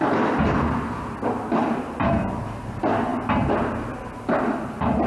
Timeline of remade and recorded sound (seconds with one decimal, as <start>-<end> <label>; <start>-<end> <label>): 0.0-5.1 recorded